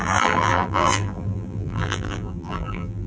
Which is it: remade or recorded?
remade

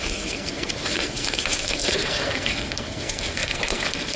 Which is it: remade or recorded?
remade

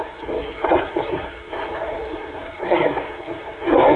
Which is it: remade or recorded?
remade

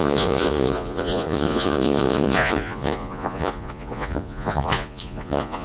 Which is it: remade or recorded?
remade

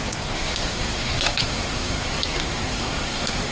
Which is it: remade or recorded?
remade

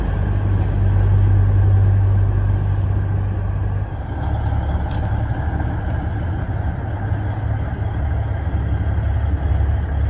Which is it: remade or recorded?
recorded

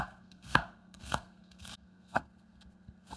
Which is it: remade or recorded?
remade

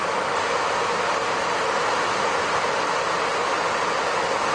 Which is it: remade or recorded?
recorded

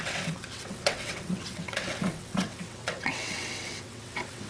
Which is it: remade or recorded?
remade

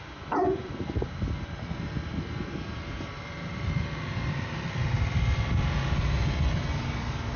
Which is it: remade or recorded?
recorded